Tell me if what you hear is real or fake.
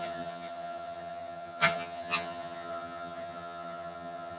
fake